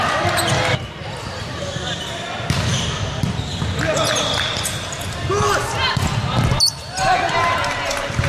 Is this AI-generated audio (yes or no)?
no